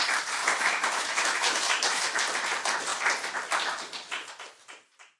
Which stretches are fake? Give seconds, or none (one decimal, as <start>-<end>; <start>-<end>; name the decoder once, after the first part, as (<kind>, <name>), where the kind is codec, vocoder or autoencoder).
0.4-2.2 (autoencoder, DAC-VAE)